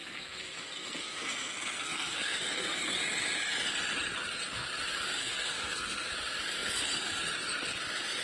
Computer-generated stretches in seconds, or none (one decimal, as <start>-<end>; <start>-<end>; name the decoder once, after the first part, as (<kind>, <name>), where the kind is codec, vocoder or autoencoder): 0.0-2.8 (codec, SNAC); 5.2-6.1

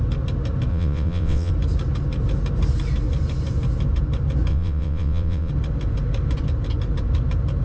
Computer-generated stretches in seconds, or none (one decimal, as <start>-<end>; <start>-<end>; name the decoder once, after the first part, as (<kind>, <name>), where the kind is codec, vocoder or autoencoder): 0.7-1.5 (vocoder, WaveNeXt); 4.5-5.5

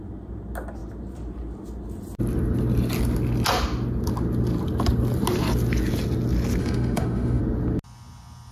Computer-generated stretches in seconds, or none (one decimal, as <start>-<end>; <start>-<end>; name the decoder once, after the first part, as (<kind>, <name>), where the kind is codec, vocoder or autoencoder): 6.6-7.4 (autoencoder, DAC-VAE)

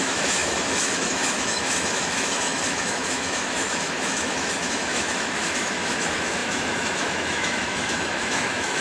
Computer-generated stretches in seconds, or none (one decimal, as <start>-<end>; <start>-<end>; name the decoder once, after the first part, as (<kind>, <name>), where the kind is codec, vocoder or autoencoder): 0.0-8.8 (autoencoder, DAC-VAE)

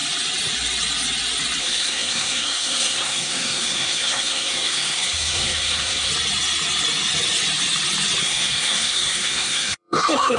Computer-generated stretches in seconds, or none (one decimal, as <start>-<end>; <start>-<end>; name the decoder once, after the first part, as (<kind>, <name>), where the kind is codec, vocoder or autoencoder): 1.6-6.1 (codec, SNAC); 8.2-10.4

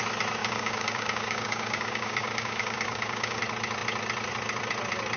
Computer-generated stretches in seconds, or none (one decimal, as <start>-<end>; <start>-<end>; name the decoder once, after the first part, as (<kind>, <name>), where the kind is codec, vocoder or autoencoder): 0.4-3.4 (codec, DAC)

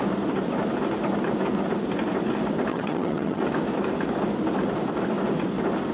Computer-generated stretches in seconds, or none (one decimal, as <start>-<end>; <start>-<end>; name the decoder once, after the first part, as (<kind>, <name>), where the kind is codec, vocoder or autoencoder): 2.7-3.4 (vocoder, HiFi-GAN)

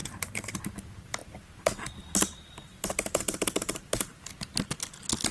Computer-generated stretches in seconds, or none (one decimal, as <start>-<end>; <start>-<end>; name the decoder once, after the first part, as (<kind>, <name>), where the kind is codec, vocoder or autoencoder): 0.0-0.6 (vocoder, BigVGAN v2); 2.7-4.3